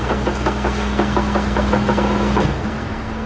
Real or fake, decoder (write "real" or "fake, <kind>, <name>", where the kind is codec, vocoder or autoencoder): fake, codec, SNAC